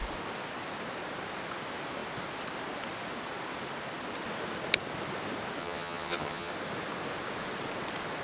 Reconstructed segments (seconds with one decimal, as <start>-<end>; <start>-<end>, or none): 5.6-6.5